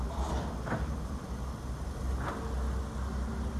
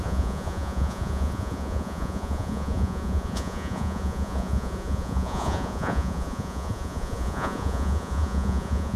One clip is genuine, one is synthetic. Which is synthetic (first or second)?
second